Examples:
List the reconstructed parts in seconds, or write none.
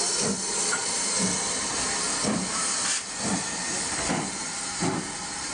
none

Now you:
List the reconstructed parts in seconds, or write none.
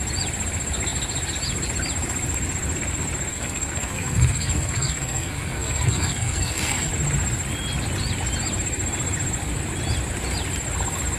3.3-6.9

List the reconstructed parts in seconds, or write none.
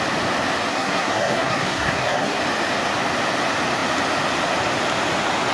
0.7-2.4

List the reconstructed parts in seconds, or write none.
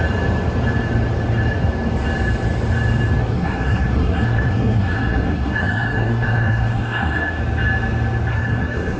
3.2-7.4; 8.3-9.0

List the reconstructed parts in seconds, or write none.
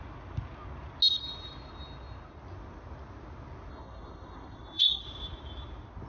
3.7-5.0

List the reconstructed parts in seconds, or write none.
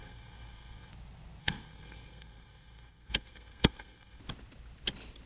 0.0-0.9; 1.4-4.2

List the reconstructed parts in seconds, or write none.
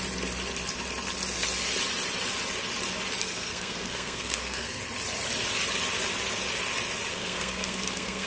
3.2-4.8; 7.1-8.3